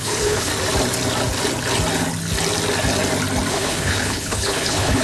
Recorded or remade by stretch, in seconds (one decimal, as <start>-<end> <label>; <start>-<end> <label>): 0.0-0.5 remade; 0.5-3.5 recorded; 3.5-5.0 remade